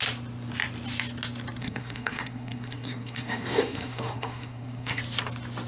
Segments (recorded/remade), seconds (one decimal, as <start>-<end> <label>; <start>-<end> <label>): 0.0-1.6 recorded; 1.6-5.0 remade; 5.0-5.7 recorded